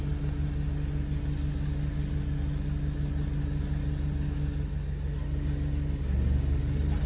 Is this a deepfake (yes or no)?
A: no